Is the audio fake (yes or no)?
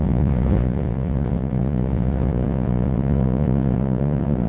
yes